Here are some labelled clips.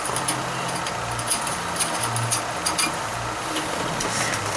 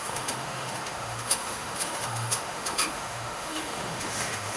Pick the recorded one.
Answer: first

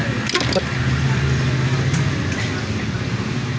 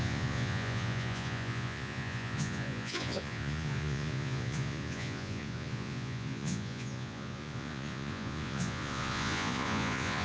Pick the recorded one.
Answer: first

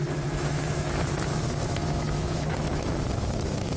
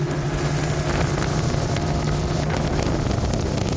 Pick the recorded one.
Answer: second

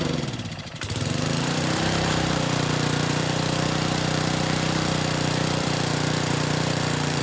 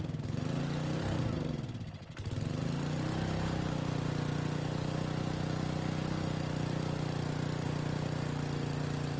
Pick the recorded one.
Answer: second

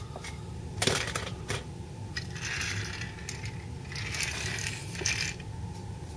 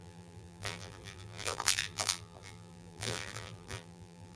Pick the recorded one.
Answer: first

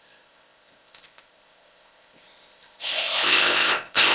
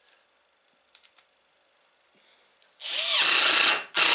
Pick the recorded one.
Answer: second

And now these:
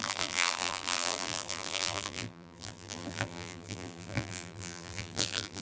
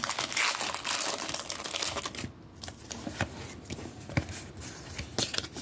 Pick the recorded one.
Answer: second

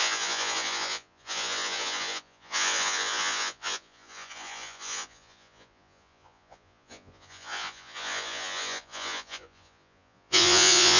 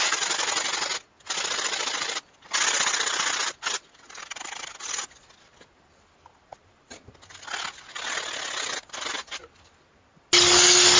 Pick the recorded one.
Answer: second